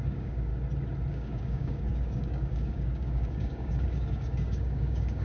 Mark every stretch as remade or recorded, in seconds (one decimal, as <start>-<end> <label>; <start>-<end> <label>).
0.0-0.5 remade; 0.5-1.1 recorded; 1.1-5.2 remade